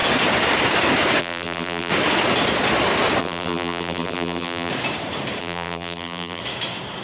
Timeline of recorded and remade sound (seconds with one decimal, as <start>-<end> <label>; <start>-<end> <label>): 0.0-1.2 recorded; 1.2-1.9 remade; 1.9-3.2 recorded; 3.2-4.7 remade; 4.7-5.4 recorded; 5.4-6.4 remade; 6.4-7.0 recorded